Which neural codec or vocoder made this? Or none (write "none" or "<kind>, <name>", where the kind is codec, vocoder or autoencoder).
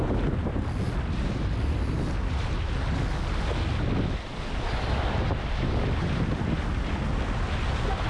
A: none